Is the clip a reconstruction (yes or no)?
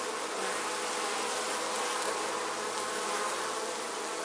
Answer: no